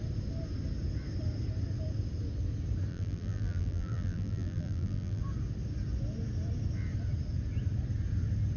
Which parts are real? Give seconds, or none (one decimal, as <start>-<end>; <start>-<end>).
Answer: 0.0-2.9; 5.2-8.6